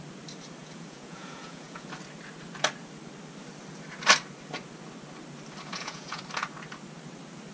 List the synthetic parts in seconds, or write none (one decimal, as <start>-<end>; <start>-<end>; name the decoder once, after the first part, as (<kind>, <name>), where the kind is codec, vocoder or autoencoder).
0.6-1.9 (vocoder, Vocos); 5.7-6.2